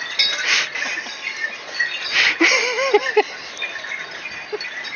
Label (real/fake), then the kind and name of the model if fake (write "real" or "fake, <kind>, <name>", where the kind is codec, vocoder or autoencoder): real